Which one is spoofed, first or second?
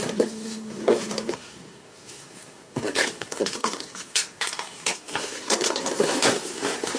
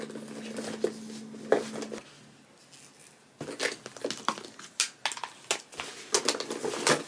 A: first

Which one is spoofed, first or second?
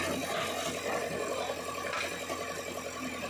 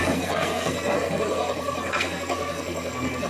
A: second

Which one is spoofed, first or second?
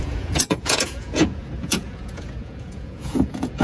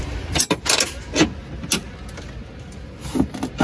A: first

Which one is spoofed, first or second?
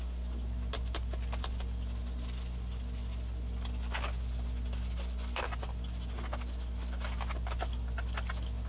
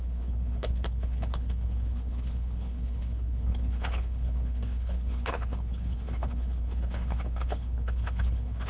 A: second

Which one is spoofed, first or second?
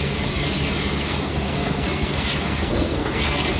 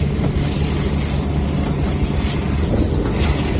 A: first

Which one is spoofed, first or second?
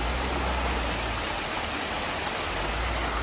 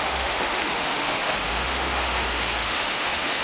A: second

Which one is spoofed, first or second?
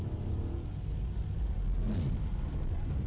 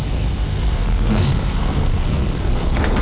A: second